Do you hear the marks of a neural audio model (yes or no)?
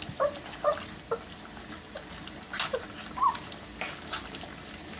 no